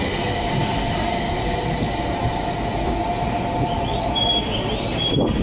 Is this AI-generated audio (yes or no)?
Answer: no